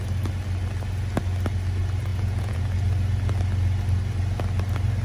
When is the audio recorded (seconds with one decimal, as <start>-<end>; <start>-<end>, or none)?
0.0-2.1; 2.6-5.0